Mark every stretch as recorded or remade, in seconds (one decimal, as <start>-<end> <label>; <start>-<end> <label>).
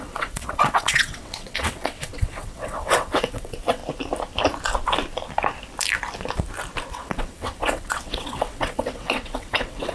0.0-3.8 remade; 3.8-6.9 recorded; 6.9-9.9 remade